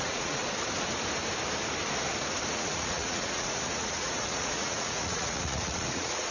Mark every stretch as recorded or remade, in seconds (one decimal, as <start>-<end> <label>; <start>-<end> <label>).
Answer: 0.0-0.4 remade; 0.4-2.5 recorded; 2.5-6.3 remade